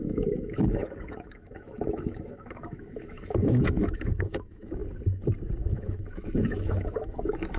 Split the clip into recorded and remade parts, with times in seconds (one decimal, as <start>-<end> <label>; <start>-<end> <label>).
0.0-4.8 remade; 4.8-5.6 recorded; 5.6-7.6 remade